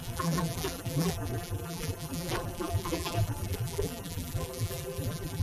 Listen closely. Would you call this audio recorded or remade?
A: remade